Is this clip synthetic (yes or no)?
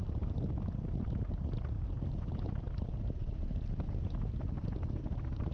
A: no